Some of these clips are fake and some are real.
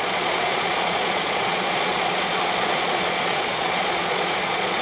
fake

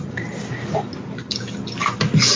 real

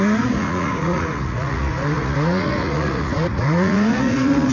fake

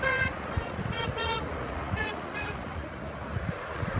fake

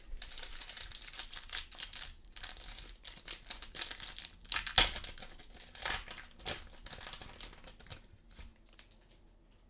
real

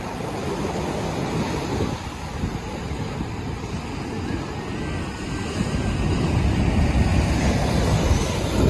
real